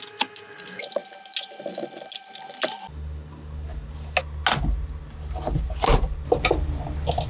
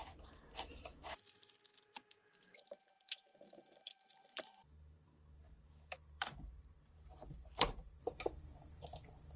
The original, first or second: first